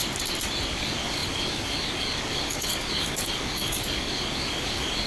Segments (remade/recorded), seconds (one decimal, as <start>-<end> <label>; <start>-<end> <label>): 0.0-0.7 recorded; 0.7-5.1 remade